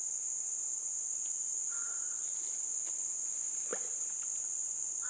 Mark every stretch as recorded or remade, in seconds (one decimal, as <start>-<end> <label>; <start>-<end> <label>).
0.0-5.1 remade